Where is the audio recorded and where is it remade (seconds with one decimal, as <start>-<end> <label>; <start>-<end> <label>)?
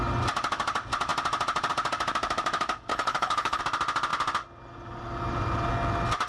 0.0-2.9 recorded; 2.9-3.6 remade; 3.6-6.3 recorded